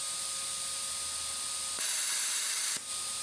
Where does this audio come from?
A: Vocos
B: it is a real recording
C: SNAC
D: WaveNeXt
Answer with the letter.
B